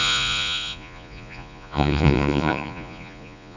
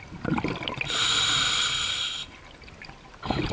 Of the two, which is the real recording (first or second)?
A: second